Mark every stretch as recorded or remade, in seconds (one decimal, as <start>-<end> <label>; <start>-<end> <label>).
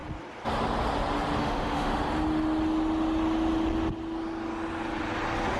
0.0-1.4 recorded; 1.4-1.9 remade; 1.9-5.6 recorded